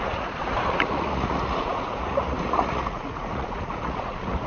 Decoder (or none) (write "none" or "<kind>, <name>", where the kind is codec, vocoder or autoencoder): vocoder, Vocos